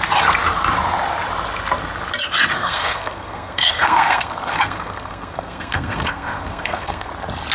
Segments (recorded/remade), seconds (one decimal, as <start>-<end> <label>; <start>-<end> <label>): 0.0-2.6 recorded; 2.6-7.1 remade; 7.1-7.5 recorded